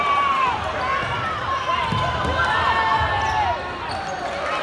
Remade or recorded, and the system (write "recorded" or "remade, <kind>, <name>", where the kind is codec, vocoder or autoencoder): recorded